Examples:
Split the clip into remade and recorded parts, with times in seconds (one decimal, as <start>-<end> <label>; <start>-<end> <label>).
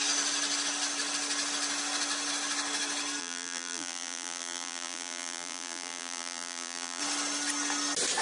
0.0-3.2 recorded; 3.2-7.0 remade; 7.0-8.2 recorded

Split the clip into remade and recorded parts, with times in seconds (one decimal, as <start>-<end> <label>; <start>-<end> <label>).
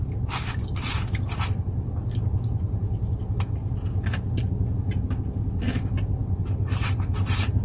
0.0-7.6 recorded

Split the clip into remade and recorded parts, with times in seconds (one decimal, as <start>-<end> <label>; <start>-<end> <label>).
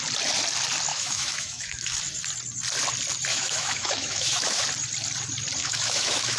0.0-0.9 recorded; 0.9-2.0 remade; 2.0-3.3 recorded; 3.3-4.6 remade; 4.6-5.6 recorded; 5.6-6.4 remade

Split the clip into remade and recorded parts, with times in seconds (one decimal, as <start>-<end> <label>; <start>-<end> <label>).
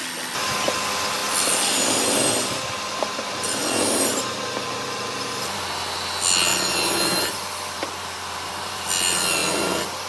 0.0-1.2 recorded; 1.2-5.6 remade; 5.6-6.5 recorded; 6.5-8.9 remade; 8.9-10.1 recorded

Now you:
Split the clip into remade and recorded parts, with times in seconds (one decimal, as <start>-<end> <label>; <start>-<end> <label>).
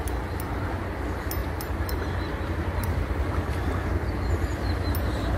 0.0-1.4 recorded; 1.4-2.0 remade; 2.0-5.4 recorded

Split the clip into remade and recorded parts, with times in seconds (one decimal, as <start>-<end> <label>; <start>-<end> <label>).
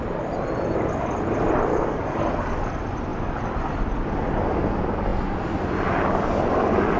0.0-1.7 recorded; 1.7-2.2 remade; 2.2-7.0 recorded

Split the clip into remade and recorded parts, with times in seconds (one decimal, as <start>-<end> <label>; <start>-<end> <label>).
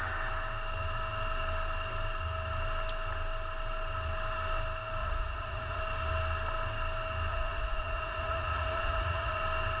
0.0-5.0 recorded; 5.0-5.8 remade; 5.8-7.3 recorded; 7.3-9.4 remade; 9.4-9.8 recorded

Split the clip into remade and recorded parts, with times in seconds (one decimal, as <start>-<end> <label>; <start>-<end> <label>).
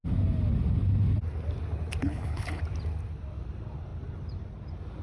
0.0-2.0 recorded; 2.0-2.6 remade; 2.6-5.0 recorded